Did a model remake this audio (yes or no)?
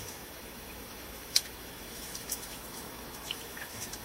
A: yes